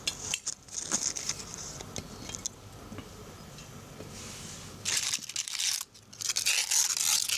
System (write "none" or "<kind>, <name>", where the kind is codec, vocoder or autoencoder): none